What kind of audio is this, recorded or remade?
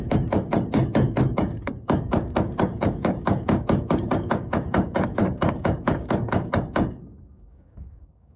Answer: remade